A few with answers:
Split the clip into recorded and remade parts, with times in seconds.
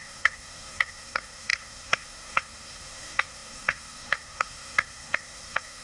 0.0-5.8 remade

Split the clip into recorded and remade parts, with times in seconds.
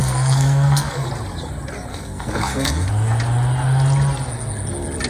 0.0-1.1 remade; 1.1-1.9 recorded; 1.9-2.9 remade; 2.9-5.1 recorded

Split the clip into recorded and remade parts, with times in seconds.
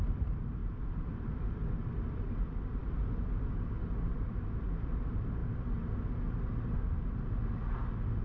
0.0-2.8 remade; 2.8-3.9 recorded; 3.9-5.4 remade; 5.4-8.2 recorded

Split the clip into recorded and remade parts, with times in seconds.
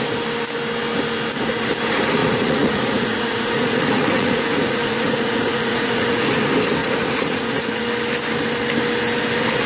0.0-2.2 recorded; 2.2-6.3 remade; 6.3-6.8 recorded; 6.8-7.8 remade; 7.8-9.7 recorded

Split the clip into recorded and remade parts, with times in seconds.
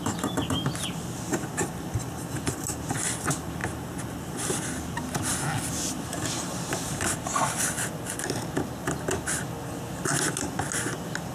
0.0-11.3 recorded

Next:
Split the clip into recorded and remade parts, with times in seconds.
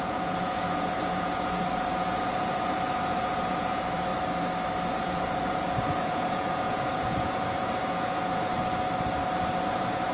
0.0-4.1 remade; 4.1-4.9 recorded; 4.9-8.5 remade; 8.5-9.7 recorded; 9.7-10.1 remade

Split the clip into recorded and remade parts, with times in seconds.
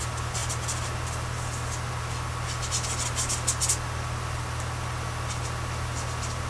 0.0-6.5 recorded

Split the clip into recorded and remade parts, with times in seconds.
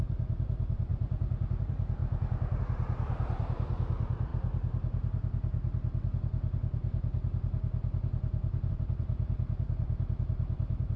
0.0-2.0 remade; 2.0-2.6 recorded; 2.6-4.3 remade; 4.3-8.7 recorded; 8.7-11.0 remade